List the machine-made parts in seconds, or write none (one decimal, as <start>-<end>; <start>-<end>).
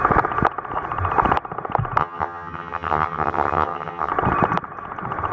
2.0-4.1